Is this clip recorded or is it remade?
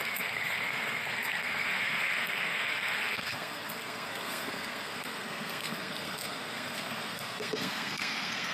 remade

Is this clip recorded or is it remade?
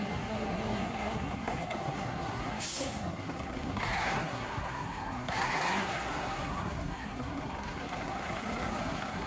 remade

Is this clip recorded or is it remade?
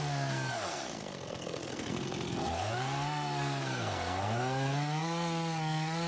remade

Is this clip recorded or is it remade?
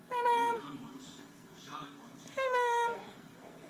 remade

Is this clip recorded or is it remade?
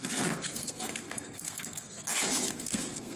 remade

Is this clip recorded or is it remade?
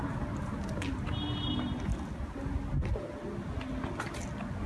recorded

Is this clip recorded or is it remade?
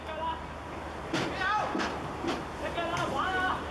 recorded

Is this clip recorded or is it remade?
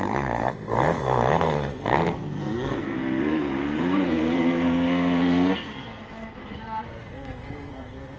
remade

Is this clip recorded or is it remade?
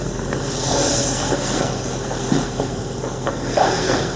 remade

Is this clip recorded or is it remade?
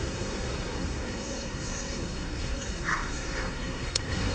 remade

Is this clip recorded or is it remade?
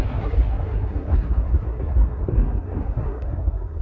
remade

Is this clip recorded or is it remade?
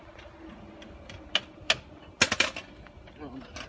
recorded